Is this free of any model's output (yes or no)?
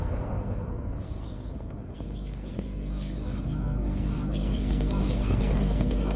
no